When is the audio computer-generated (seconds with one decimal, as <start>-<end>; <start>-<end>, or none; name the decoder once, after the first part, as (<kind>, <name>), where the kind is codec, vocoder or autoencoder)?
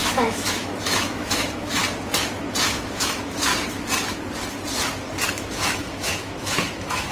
0.0-1.8 (autoencoder, DAC-VAE); 2.6-3.5; 5.3-7.1